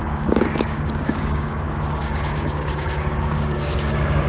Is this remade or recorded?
remade